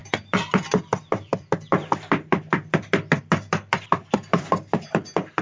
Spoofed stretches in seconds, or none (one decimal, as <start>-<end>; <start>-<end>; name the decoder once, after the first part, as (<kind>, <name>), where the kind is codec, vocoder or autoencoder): 0.0-0.8 (vocoder, BigVGAN v2); 1.3-4.5